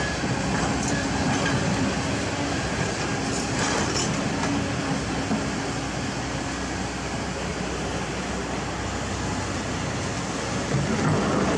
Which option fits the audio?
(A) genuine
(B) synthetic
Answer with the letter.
A